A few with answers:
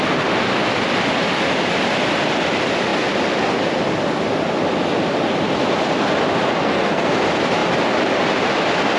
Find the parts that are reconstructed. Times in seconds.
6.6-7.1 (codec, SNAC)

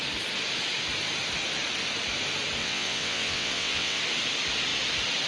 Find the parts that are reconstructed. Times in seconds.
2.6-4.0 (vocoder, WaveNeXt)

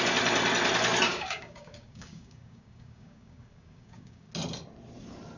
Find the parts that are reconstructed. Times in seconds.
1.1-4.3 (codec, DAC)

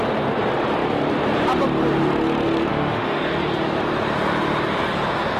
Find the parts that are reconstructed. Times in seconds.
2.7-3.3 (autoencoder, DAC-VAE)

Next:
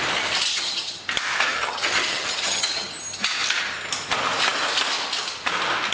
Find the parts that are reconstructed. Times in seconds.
0.5-1.0 (vocoder, HiFi-GAN); 1.5-2.9